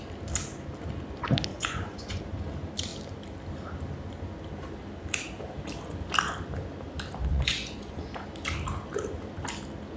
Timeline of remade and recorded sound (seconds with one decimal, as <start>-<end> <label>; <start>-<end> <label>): 0.0-1.5 recorded; 1.5-2.2 remade; 2.2-7.3 recorded; 7.3-8.1 remade; 8.1-10.0 recorded